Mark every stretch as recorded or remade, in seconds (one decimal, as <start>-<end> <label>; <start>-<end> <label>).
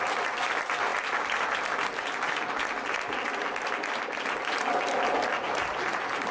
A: 0.0-6.3 recorded